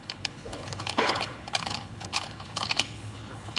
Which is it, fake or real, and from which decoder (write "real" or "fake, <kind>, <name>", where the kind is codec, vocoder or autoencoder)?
fake, codec, HILCodec